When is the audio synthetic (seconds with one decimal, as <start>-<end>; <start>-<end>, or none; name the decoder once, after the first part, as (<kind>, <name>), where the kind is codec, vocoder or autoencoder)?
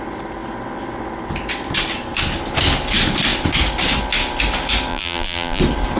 4.9-5.6 (vocoder, BigVGAN v2)